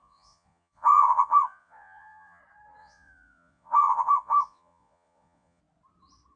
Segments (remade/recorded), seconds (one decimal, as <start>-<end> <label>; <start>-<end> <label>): 0.0-2.4 remade; 2.4-2.8 recorded; 2.8-5.6 remade; 5.6-6.4 recorded